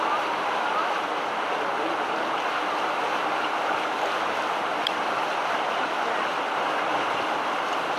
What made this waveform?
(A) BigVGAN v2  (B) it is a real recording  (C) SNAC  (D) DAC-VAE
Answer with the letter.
B